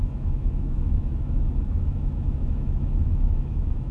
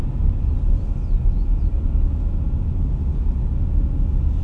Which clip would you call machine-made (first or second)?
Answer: first